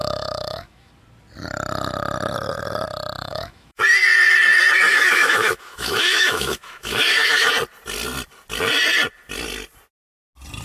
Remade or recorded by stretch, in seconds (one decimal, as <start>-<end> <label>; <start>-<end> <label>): 0.0-0.9 remade; 0.9-3.2 recorded; 3.2-3.8 remade; 3.8-4.9 recorded; 4.9-7.5 remade; 7.5-10.6 recorded